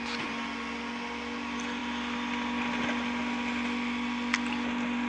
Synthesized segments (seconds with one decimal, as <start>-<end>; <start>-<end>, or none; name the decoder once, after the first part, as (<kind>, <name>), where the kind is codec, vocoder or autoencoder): none